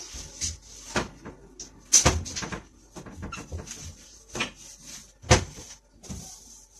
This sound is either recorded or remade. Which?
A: recorded